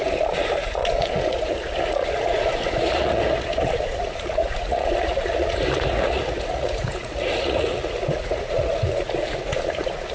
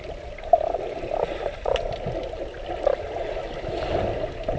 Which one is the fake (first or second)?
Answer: first